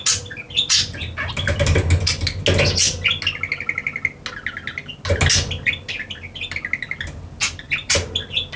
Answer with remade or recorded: recorded